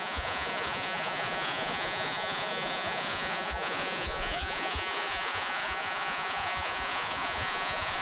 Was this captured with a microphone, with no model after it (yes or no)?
no